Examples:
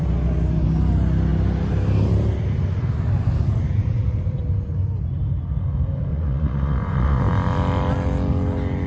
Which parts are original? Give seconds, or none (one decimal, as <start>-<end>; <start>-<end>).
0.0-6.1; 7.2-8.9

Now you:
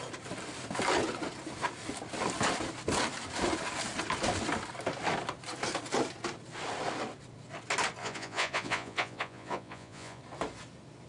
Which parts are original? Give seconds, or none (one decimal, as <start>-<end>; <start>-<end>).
0.0-8.0; 10.2-11.1

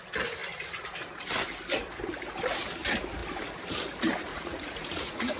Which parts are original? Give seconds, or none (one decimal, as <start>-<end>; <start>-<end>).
0.0-4.3

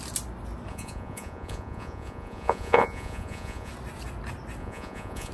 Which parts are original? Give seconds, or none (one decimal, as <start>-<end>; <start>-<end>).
0.0-0.7; 3.7-4.6